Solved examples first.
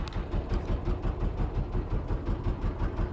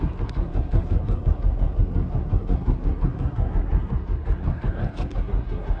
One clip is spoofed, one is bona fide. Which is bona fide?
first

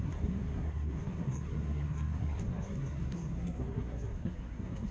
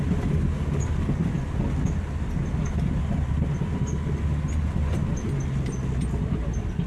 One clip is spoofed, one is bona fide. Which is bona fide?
second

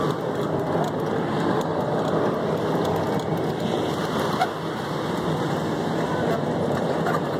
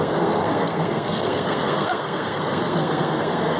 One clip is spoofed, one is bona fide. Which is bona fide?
first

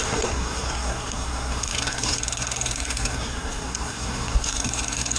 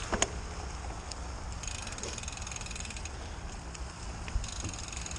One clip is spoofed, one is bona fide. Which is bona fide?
second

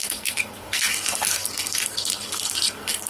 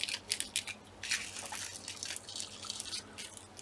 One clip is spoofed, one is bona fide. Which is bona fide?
second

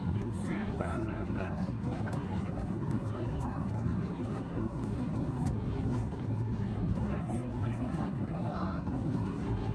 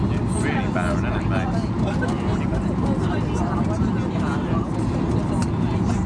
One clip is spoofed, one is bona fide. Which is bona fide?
second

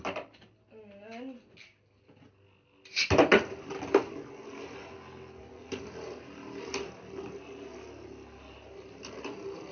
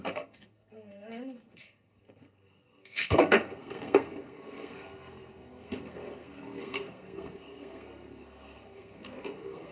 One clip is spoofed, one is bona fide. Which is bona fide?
first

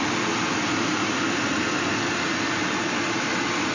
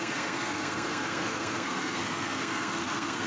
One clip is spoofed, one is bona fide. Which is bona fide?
first